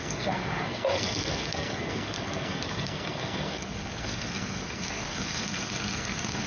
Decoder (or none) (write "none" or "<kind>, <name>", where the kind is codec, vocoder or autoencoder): codec, SNAC